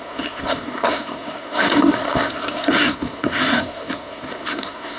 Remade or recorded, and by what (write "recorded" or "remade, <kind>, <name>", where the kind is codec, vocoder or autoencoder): remade, codec, SNAC